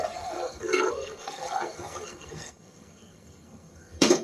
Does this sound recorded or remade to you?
remade